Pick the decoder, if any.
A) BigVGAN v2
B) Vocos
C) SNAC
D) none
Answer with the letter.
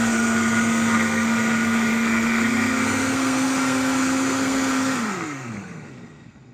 C